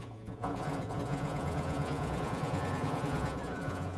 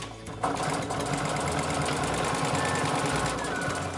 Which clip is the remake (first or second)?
first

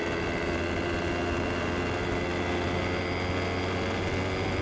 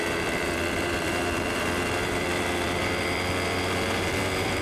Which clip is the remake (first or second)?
second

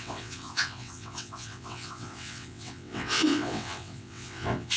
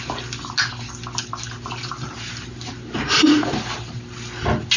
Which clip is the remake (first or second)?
first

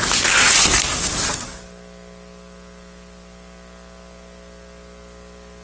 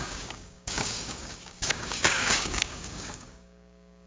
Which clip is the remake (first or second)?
second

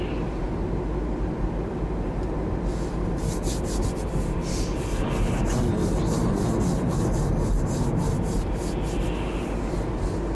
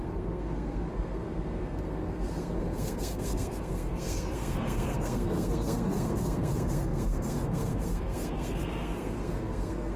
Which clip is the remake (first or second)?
second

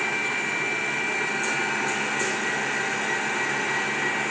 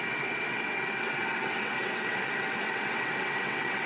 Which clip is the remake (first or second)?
second